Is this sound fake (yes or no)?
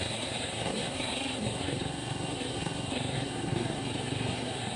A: yes